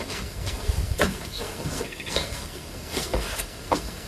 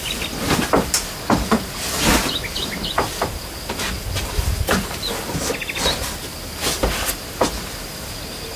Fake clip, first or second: first